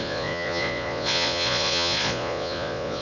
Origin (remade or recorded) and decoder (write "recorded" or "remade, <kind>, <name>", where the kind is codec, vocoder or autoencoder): remade, vocoder, Vocos